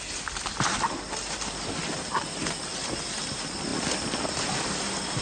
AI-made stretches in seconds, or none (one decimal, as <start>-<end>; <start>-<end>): none